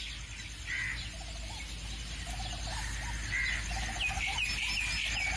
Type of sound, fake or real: real